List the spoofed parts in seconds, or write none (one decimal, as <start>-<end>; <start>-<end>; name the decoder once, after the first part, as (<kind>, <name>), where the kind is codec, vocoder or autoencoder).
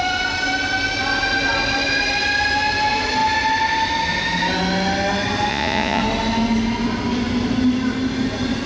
5.5-6.0 (vocoder, Vocos)